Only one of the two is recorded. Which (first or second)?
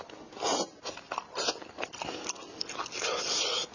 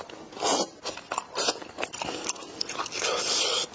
first